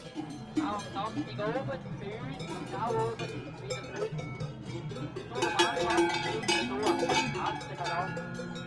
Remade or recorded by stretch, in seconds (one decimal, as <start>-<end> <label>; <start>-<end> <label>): 0.0-3.9 recorded; 3.9-4.9 remade; 4.9-8.7 recorded